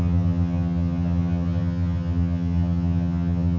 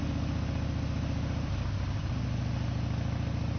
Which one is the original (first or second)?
second